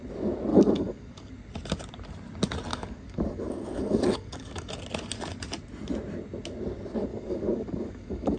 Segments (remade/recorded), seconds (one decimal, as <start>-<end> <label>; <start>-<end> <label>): 0.0-0.5 recorded; 0.5-1.3 remade; 1.3-2.7 recorded; 2.7-4.7 remade; 4.7-7.1 recorded; 7.1-8.4 remade